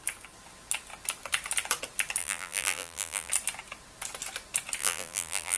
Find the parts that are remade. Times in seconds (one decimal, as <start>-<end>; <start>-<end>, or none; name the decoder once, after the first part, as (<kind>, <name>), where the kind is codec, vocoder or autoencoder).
2.2-3.3 (vocoder, BigVGAN v2); 4.8-5.6